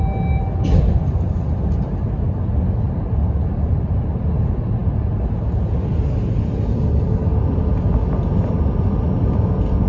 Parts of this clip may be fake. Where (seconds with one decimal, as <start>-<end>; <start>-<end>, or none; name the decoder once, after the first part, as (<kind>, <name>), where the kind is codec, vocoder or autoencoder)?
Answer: none